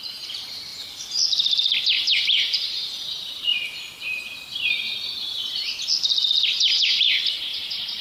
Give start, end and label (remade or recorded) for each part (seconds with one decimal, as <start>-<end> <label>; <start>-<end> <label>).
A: 0.0-0.7 remade; 0.7-1.8 recorded; 1.8-3.5 remade; 3.5-6.8 recorded; 6.8-8.0 remade